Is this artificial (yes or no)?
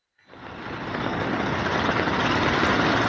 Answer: no